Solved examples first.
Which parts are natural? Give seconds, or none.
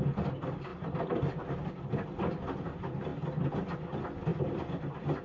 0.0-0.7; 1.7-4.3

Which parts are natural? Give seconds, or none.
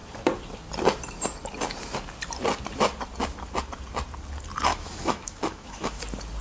0.0-4.7; 6.0-6.4